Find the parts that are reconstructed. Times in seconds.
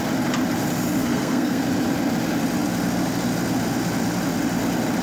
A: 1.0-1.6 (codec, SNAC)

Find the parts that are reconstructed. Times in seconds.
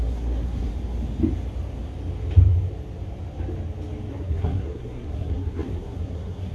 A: 0.0-0.7 (codec, SNAC); 4.1-6.5